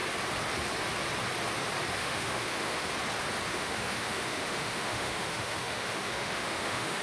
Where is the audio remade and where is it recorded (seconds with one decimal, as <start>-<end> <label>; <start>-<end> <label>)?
0.0-2.0 recorded; 2.0-2.9 remade; 2.9-3.5 recorded; 3.5-7.0 remade